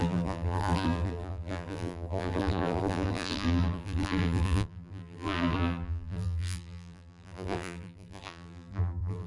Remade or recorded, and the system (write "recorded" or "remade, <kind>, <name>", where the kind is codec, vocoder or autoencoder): remade, vocoder, BigVGAN v2